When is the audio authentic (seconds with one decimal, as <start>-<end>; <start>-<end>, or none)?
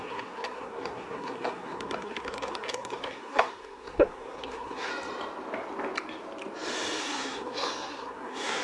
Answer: 4.9-7.0